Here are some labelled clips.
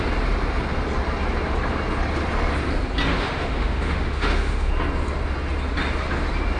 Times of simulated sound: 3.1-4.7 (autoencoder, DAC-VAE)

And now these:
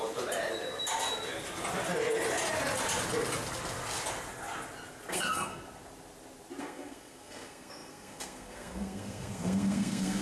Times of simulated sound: 5.1-5.5 (codec, SNAC); 6.6-10.2

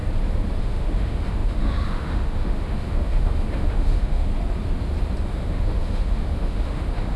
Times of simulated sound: 0.6-4.3 (autoencoder, DAC-VAE); 5.2-7.2

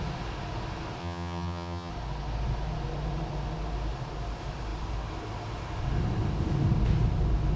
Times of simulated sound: 1.0-1.9 (vocoder, HiFi-GAN)

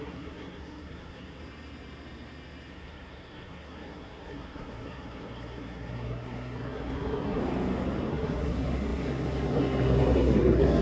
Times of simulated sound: 0.0-1.4 (codec, SNAC); 2.7-7.4; 8.1-10.8

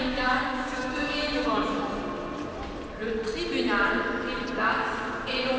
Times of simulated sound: 0.0-1.8 (codec, DAC)

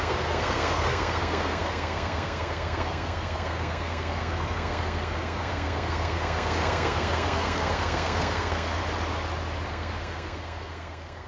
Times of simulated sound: 0.0-8.8 (codec, SNAC); 9.7-11.3